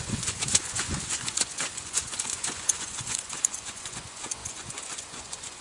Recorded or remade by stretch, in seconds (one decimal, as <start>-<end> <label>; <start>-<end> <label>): 0.0-5.6 remade